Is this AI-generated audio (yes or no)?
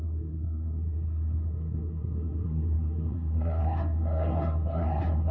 yes